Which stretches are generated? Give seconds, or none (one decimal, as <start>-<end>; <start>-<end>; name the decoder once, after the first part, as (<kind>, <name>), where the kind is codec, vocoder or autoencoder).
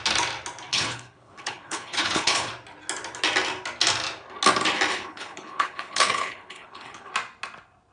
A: 0.7-2.5 (codec, HILCodec); 4.9-7.1